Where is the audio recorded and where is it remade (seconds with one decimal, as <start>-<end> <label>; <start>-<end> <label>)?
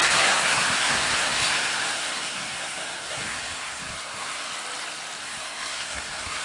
0.0-4.5 remade; 4.5-5.2 recorded; 5.2-6.4 remade